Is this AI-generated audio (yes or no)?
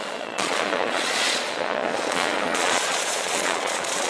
yes